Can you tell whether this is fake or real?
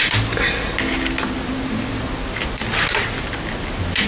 real